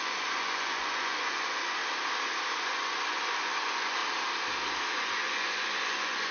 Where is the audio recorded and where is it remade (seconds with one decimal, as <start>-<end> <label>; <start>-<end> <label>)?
0.0-1.8 remade; 1.8-2.5 recorded; 2.5-4.0 remade; 4.0-4.9 recorded; 4.9-6.3 remade